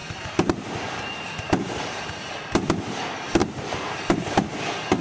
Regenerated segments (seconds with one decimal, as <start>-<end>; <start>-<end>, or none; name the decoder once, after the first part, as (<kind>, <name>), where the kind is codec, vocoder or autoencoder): 0.0-3.0 (vocoder, BigVGAN v2); 3.4-4.5